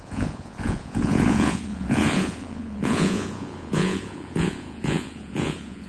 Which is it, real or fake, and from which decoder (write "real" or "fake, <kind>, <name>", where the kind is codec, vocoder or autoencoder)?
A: fake, vocoder, Vocos